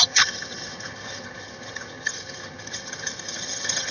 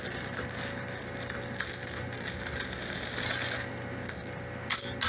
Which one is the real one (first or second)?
second